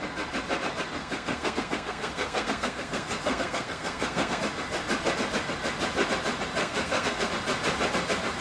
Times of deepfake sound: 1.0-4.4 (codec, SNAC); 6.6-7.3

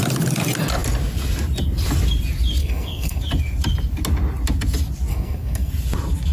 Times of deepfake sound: 2.6-3.2 (codec, SNAC); 5.1-5.7

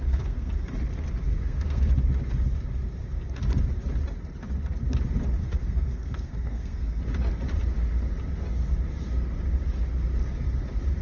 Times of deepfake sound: 0.0-0.5 (codec, SNAC); 1.3-1.9; 5.4-7.0

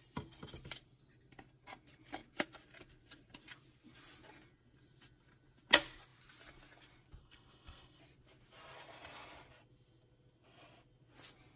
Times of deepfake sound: 7.2-8.0 (codec, SNAC)

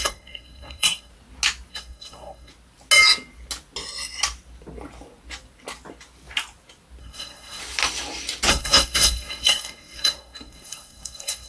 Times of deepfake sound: 0.0-1.1 (codec, SNAC); 1.7-2.5; 7.0-7.6; 8.5-11.5